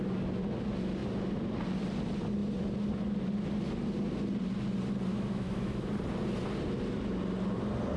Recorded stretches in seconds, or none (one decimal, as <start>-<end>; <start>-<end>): 0.0-5.1; 5.9-8.0